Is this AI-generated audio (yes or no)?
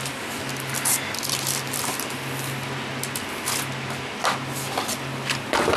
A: no